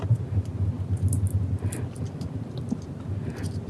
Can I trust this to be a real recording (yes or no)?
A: yes